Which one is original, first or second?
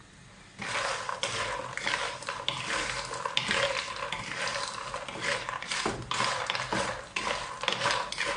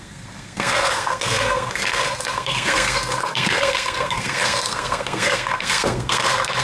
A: first